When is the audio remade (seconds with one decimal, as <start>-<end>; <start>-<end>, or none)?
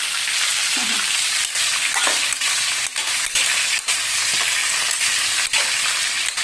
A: none